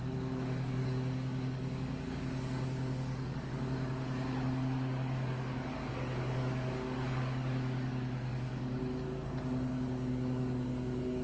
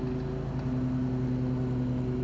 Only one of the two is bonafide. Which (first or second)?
second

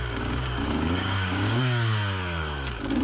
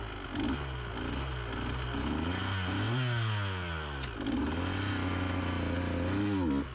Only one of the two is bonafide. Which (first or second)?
second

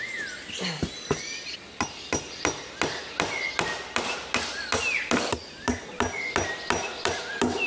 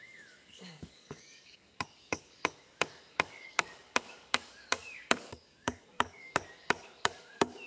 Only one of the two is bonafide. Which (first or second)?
first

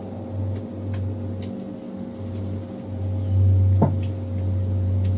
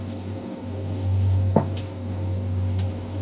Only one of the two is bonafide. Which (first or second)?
first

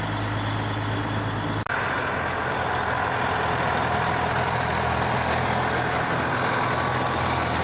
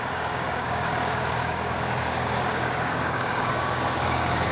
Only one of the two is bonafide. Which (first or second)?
first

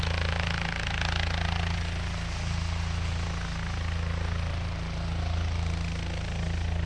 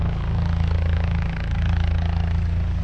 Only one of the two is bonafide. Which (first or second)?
first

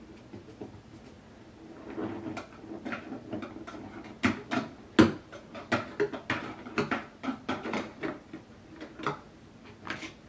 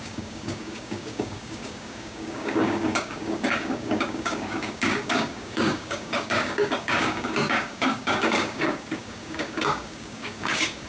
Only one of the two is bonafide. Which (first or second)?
first